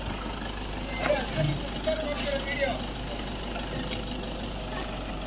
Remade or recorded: recorded